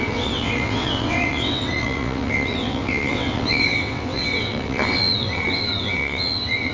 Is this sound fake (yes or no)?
yes